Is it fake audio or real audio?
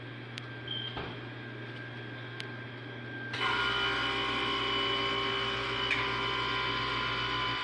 fake